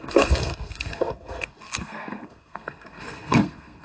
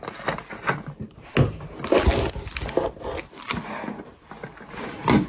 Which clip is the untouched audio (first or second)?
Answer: second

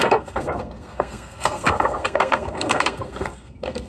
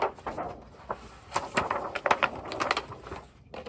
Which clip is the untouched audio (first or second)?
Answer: second